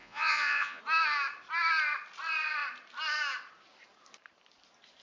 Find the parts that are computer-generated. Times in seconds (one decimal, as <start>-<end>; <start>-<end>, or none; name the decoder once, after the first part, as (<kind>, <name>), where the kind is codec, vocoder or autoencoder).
0.0-0.8 (vocoder, Vocos)